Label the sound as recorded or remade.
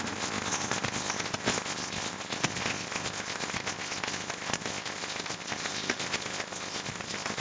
remade